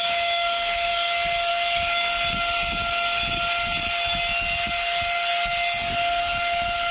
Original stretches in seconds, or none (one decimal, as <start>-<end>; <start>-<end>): 0.9-1.5; 2.1-6.2